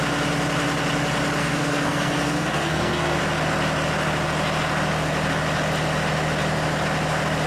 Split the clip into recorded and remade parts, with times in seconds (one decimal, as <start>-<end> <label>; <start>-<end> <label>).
0.0-1.4 recorded; 1.4-3.2 remade; 3.2-7.5 recorded